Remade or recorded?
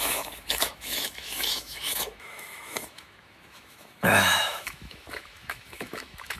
remade